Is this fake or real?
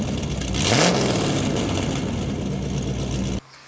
real